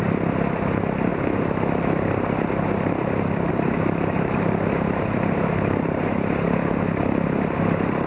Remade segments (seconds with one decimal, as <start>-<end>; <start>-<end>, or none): none